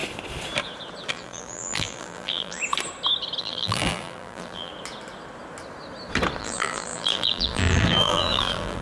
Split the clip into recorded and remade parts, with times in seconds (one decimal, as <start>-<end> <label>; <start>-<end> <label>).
0.0-1.1 recorded; 1.1-2.6 remade; 2.6-3.4 recorded; 3.4-4.7 remade; 4.7-6.4 recorded; 6.4-8.8 remade